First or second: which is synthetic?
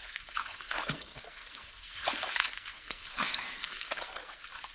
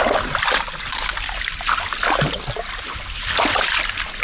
first